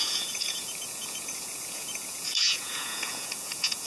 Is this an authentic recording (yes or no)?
no